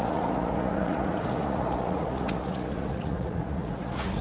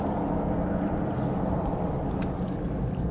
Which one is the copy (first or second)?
first